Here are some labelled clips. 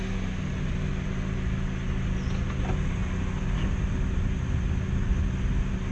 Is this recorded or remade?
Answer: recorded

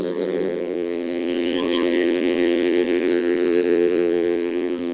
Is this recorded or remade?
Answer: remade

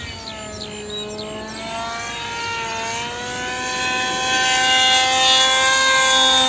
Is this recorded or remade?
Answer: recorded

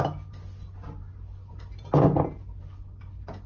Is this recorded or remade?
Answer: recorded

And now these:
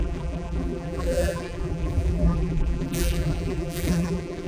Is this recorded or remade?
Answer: remade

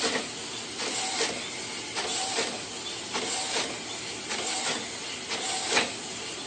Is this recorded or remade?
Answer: recorded